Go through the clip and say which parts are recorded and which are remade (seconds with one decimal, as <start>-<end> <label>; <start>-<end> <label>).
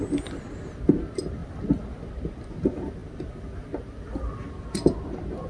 0.0-5.5 recorded